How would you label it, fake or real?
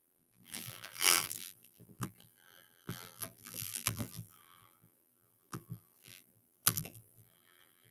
fake